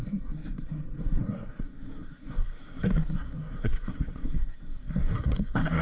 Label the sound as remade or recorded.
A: remade